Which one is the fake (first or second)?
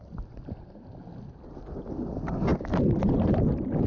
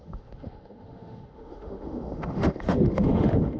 second